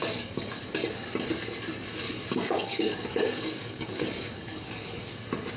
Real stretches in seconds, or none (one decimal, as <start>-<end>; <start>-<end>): 0.6-2.1; 5.0-5.6